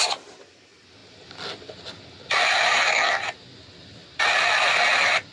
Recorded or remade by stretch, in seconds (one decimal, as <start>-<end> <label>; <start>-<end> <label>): 0.0-5.3 recorded